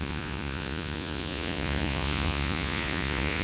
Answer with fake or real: fake